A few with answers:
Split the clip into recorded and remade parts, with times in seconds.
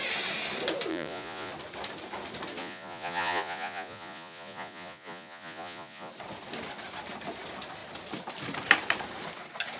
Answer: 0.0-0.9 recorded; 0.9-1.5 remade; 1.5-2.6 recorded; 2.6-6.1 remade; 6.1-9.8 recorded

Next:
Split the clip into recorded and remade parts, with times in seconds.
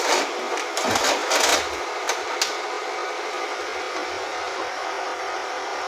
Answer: 0.0-4.3 recorded; 4.3-4.8 remade; 4.8-5.9 recorded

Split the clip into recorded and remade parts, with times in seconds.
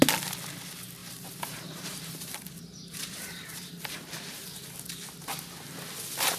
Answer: 0.0-1.0 recorded; 1.0-4.8 remade; 4.8-6.4 recorded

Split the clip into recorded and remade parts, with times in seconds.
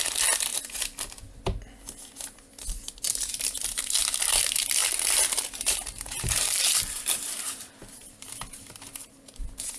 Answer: 0.0-4.8 recorded; 4.8-9.8 remade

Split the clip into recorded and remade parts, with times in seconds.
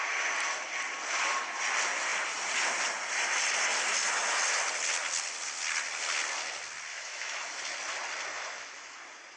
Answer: 0.0-6.9 recorded; 6.9-7.6 remade; 7.6-8.3 recorded; 8.3-9.0 remade; 9.0-9.4 recorded